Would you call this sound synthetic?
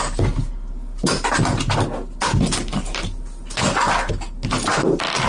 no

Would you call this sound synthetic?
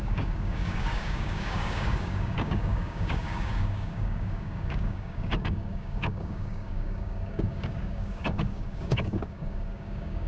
yes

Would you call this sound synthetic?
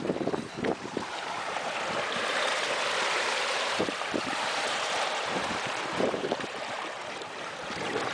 yes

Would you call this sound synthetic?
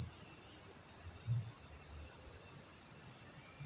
no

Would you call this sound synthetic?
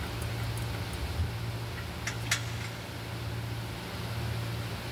no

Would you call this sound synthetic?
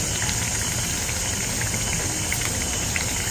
no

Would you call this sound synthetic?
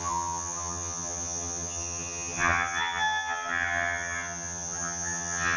yes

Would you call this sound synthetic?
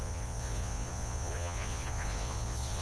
yes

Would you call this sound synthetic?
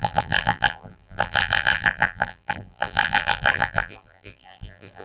yes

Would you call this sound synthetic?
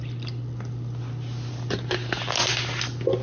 no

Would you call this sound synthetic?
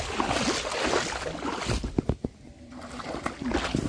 no